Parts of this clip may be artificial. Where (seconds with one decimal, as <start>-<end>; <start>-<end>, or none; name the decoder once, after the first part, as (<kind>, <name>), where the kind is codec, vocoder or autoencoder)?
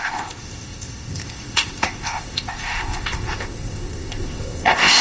0.0-5.0 (codec, ZipCodec)